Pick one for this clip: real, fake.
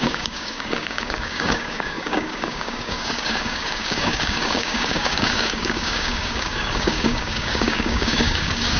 fake